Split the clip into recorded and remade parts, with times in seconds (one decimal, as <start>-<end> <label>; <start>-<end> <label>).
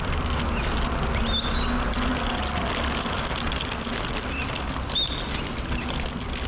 0.0-6.5 recorded